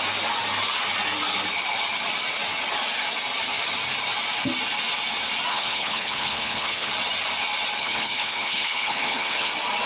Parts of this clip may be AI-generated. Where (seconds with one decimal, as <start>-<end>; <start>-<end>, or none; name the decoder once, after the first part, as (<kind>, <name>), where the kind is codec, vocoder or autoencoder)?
5.5-6.9 (codec, HILCodec); 7.8-9.5